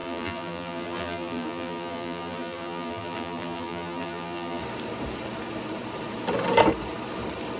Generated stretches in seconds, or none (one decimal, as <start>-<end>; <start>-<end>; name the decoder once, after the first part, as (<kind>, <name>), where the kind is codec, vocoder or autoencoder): 0.0-4.6 (vocoder, BigVGAN v2)